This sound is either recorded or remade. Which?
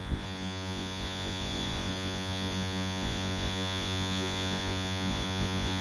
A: remade